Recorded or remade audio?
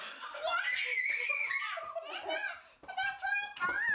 recorded